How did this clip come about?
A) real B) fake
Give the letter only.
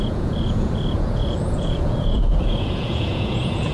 B